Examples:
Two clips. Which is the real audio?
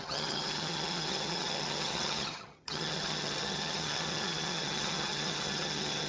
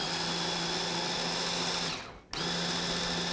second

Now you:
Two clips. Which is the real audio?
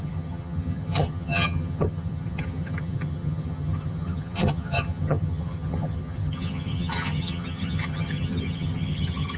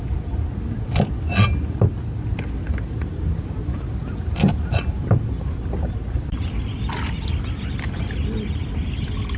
second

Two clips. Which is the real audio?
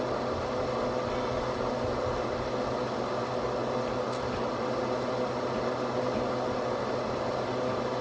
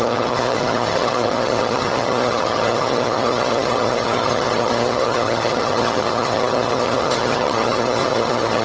first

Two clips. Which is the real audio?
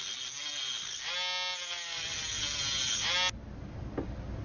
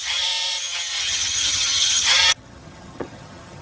first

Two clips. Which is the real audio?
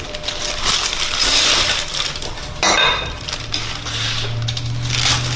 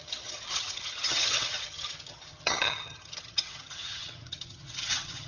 first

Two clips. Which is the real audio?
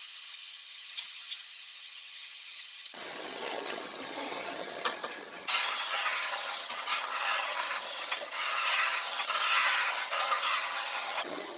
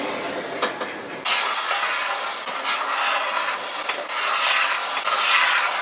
second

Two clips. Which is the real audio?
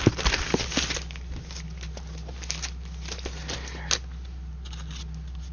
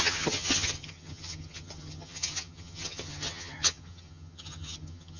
first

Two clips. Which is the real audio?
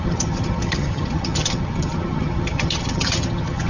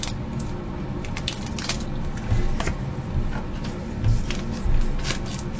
second